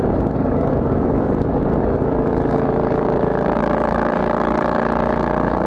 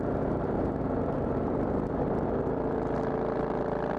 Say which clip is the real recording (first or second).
second